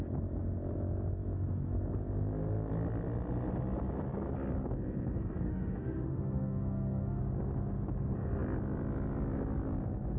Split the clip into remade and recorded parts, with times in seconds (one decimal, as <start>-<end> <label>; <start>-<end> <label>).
0.0-5.5 recorded; 5.5-7.2 remade; 7.2-10.2 recorded